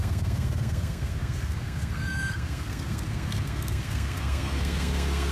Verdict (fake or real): fake